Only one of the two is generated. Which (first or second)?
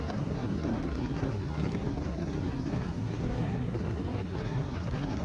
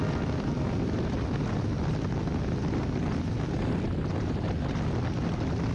first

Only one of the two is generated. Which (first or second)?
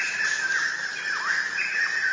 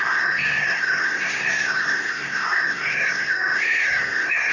second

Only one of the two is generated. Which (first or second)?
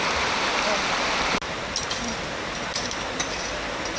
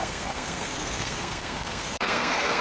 second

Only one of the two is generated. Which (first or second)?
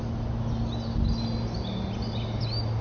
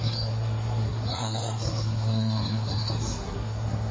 second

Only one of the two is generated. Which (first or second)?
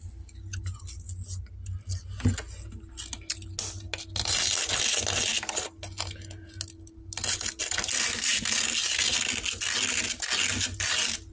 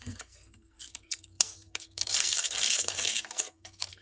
second